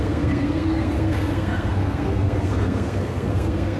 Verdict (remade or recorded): remade